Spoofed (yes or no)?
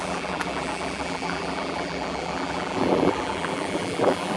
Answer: yes